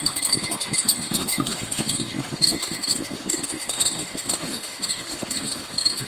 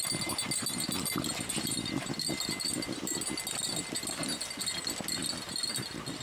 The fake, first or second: first